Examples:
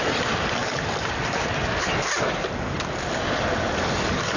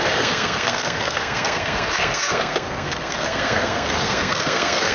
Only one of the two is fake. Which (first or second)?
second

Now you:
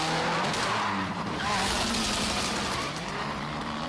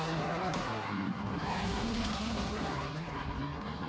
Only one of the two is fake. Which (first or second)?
second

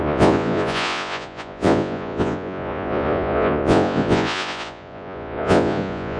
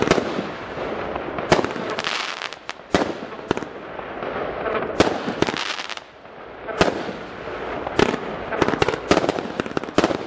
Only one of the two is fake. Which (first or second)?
first